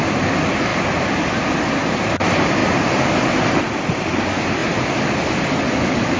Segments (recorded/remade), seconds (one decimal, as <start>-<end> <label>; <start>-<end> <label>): 0.0-0.7 remade; 0.7-2.1 recorded; 2.1-4.6 remade; 4.6-5.5 recorded; 5.5-6.2 remade